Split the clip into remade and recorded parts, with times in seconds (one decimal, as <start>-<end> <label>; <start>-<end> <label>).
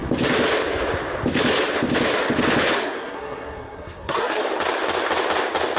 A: 0.0-2.8 recorded; 2.8-4.4 remade; 4.4-5.8 recorded